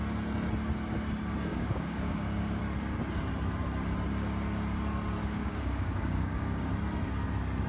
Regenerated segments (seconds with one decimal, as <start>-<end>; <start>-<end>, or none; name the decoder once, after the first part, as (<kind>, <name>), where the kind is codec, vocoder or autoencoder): 1.5-2.6 (codec, DAC); 5.2-6.7